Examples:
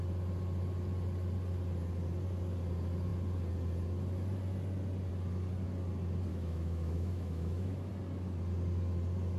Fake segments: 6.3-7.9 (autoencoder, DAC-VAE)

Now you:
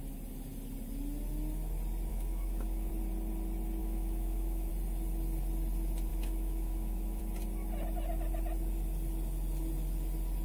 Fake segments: 2.1-2.9 (autoencoder, DAC-VAE); 3.8-4.7; 6.1-7.2

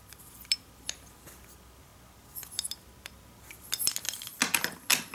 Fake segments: none

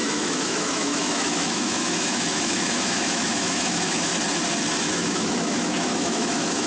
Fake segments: 0.0-4.1 (autoencoder, DAC-VAE); 4.8-6.7

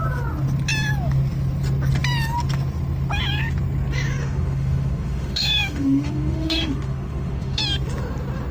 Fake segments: 4.2-7.6 (autoencoder, DAC-VAE)

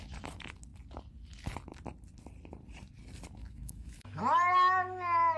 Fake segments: 3.4-4.2 (autoencoder, DAC-VAE)

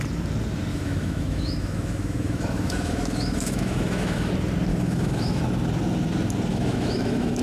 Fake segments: 0.7-4.3 (autoencoder, DAC-VAE); 4.7-5.4; 6.5-7.4

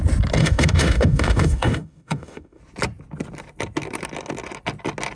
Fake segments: 0.4-2.6 (autoencoder, DAC-VAE)